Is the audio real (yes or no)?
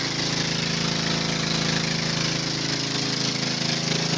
yes